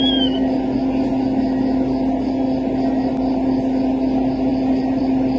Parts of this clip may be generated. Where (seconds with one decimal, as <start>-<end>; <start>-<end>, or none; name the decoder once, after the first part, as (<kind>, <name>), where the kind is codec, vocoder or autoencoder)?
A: none